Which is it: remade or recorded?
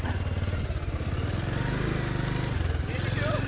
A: recorded